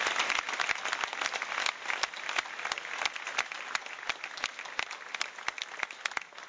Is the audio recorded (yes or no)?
yes